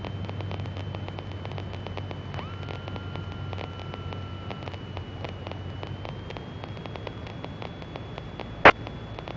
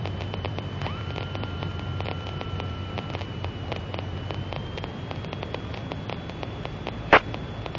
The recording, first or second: first